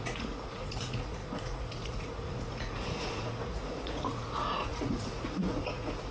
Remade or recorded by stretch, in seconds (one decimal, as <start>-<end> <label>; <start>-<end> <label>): 0.0-6.1 remade